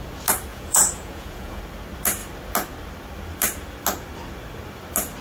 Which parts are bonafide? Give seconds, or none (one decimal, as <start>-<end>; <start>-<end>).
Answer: 0.0-0.5; 1.6-5.2